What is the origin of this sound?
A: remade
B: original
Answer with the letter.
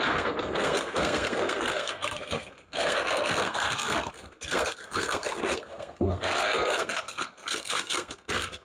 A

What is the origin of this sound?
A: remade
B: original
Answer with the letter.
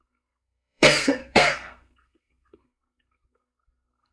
A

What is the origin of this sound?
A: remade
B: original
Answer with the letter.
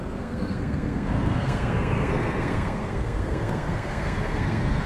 A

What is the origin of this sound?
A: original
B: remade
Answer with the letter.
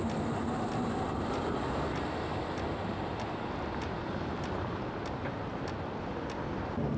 A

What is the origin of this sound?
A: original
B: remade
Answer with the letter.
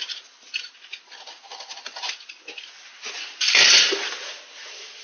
A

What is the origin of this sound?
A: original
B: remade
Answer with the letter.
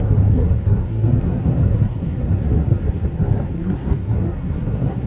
B